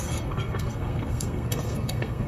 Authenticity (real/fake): fake